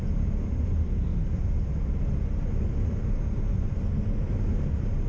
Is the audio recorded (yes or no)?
yes